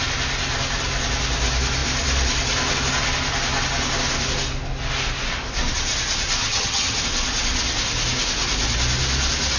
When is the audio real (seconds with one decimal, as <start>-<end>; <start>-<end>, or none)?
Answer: 0.0-6.4; 7.0-9.6